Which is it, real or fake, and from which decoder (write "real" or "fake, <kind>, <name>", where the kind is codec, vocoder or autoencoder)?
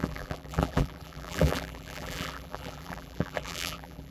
fake, vocoder, BigVGAN v2